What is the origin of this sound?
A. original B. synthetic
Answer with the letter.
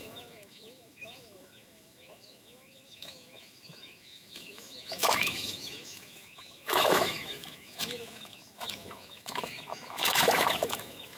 B